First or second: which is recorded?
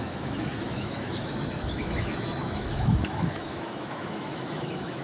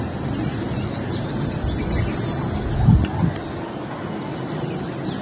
second